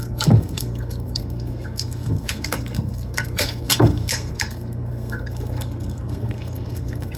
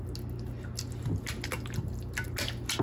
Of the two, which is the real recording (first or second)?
second